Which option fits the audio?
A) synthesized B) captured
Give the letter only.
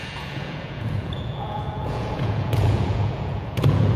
A